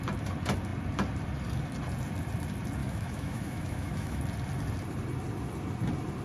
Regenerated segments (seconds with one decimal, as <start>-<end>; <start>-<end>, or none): 2.8-4.2